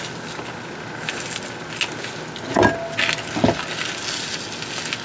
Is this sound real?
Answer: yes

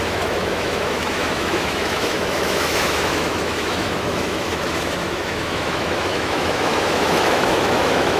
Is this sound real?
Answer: no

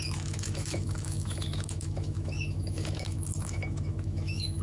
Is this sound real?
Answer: no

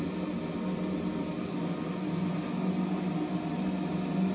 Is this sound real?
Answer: yes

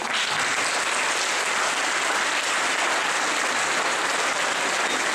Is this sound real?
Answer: yes